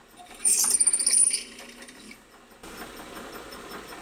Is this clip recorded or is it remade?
recorded